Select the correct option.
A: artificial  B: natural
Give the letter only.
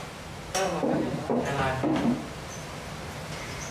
B